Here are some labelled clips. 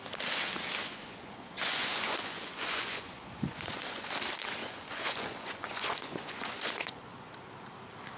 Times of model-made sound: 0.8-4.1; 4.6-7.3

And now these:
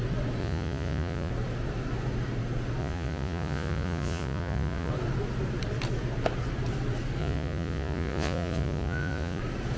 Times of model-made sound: 0.4-1.3; 2.8-4.9; 7.2-9.4

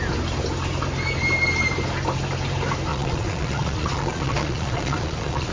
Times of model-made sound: 2.9-5.5

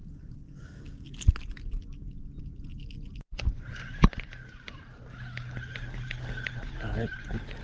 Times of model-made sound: none

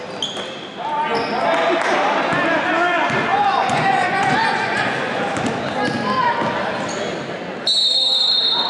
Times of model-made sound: 3.3-5.2